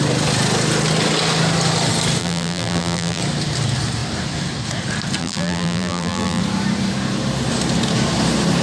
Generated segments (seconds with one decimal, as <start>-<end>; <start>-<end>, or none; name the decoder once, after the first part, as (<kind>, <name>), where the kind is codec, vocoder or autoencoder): 2.2-3.2 (vocoder, BigVGAN v2); 5.2-6.4

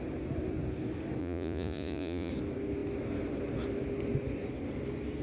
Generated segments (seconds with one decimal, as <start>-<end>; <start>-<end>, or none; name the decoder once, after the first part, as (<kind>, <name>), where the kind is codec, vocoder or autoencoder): 1.2-2.3 (vocoder, Vocos)

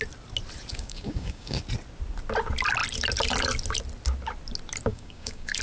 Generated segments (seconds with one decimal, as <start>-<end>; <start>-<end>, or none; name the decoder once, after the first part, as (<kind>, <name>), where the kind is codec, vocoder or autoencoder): 0.7-1.6 (codec, DAC); 4.9-5.6

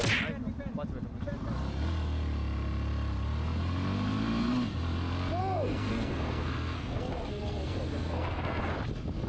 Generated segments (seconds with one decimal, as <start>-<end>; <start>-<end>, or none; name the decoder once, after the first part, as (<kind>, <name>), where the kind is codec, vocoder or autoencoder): 5.4-8.7 (codec, SNAC)

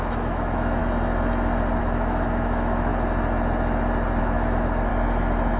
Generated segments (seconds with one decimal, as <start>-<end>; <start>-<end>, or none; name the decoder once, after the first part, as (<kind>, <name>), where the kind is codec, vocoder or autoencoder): 0.0-0.8 (autoencoder, DAC-VAE); 1.8-2.9; 4.2-4.9

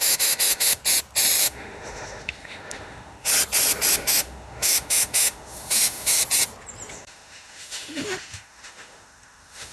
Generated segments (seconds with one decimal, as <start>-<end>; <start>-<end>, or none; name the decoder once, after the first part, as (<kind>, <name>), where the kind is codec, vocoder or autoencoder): 0.0-0.8 (autoencoder, DAC-VAE); 1.4-3.3; 3.9-6.2; 6.9-9.7